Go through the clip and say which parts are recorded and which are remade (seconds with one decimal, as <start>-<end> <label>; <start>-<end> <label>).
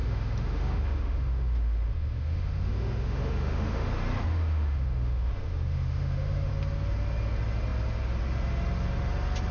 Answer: 0.0-3.9 remade; 3.9-4.3 recorded; 4.3-6.5 remade; 6.5-9.5 recorded